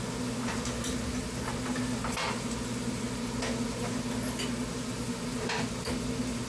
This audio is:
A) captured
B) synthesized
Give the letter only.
A